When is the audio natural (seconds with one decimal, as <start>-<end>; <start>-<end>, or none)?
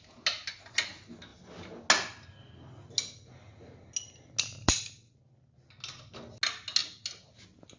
0.0-7.8